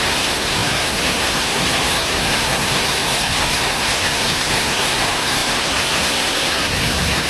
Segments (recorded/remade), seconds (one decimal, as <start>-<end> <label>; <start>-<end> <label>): 0.0-7.3 remade